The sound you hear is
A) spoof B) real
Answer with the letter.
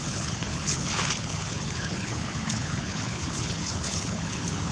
A